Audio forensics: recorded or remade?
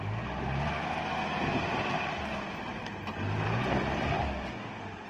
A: recorded